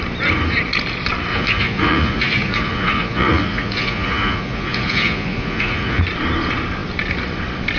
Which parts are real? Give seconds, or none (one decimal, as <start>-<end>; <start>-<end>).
0.0-1.3; 6.0-7.8